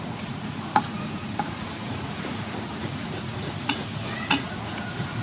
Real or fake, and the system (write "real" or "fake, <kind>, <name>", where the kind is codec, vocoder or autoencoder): fake, vocoder, Vocos